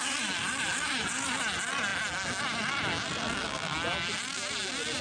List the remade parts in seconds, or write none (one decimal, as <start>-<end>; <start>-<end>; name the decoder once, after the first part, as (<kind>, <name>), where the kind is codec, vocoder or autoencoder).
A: none